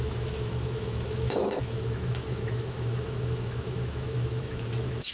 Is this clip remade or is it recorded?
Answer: remade